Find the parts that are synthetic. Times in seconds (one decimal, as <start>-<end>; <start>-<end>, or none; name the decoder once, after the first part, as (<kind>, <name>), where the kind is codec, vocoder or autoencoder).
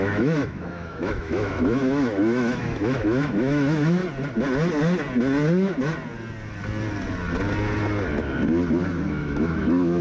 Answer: 0.0-4.0 (autoencoder, DAC-VAE); 9.1-10.0